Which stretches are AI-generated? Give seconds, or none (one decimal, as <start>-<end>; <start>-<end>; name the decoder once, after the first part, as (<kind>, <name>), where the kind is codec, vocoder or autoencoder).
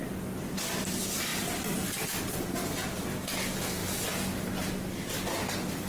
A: none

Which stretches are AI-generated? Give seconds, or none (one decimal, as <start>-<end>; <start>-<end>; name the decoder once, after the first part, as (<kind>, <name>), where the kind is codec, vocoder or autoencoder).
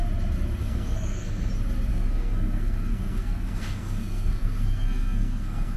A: 0.6-1.5 (codec, SNAC); 1.9-5.8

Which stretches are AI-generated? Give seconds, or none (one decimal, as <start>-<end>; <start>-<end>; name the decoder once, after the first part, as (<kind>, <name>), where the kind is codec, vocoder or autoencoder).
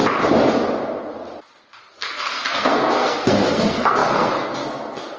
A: 1.9-5.2 (codec, SNAC)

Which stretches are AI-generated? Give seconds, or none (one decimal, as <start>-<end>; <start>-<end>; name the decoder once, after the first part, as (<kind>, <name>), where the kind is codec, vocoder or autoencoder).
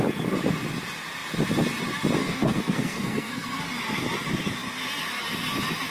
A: 2.2-3.6 (codec, SNAC)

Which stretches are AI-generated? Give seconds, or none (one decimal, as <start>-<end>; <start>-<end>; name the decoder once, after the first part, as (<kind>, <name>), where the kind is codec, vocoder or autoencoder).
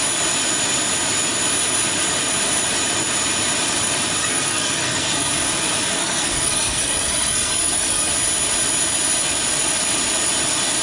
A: 4.2-5.3 (codec, SNAC); 6.0-8.1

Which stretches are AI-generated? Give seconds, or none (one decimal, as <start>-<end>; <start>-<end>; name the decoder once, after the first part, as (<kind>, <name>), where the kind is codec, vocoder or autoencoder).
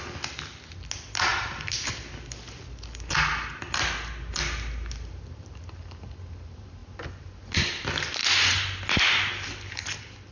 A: none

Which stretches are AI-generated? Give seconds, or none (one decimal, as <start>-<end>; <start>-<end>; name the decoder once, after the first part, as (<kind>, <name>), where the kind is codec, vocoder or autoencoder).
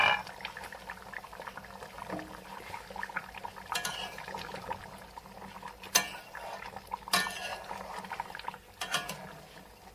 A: none